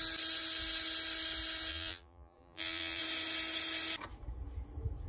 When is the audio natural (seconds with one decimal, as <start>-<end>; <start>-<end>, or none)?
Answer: 0.0-1.7; 3.0-5.1